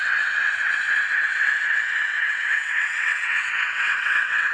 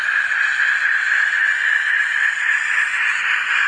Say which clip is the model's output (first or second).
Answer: first